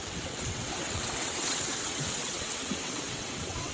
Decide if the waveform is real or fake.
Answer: fake